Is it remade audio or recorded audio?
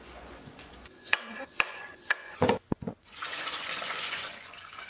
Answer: remade